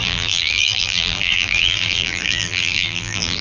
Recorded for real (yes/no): no